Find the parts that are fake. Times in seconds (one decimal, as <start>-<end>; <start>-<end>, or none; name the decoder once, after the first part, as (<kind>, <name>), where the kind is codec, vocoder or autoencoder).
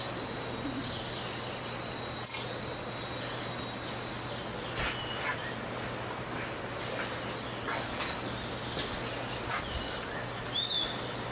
none